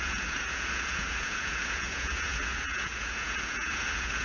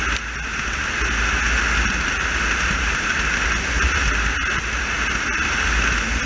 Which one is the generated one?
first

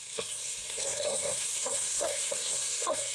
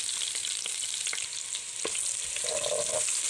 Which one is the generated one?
first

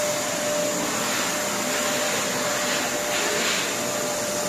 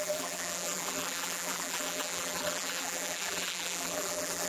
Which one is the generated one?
second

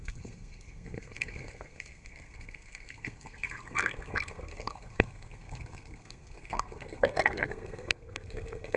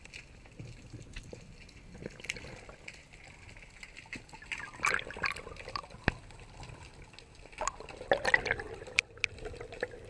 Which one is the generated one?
first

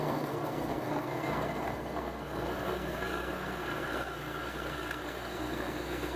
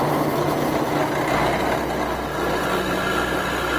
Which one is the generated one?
first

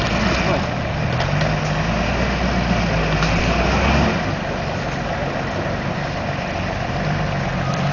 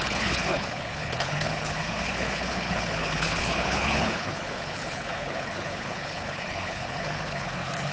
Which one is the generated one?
second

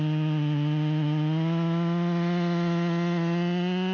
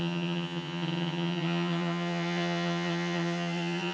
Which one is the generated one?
second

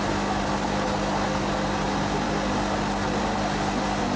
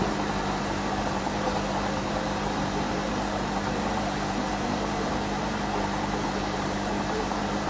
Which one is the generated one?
second